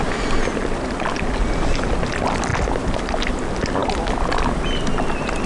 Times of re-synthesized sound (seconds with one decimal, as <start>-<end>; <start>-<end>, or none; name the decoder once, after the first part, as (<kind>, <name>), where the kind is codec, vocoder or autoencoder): 2.5-3.3 (vocoder, BigVGAN v2); 3.8-4.9